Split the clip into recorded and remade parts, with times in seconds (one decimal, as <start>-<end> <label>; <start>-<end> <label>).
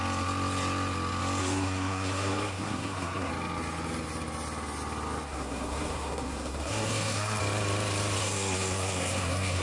0.0-1.4 recorded; 1.4-3.3 remade; 3.3-5.3 recorded; 5.3-7.4 remade; 7.4-8.2 recorded; 8.2-9.6 remade